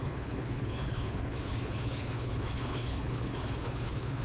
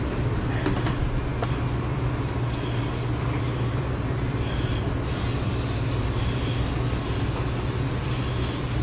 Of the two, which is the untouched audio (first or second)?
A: second